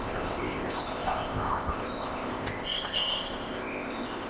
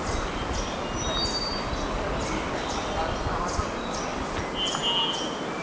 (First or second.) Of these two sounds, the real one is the second